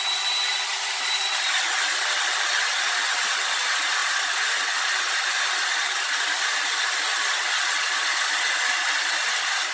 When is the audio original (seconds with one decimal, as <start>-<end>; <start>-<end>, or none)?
0.0-9.7